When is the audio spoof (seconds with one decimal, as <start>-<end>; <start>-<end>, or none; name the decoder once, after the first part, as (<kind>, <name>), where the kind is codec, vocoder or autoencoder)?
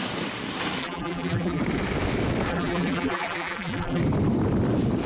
0.8-1.6 (vocoder, BigVGAN v2); 2.5-4.0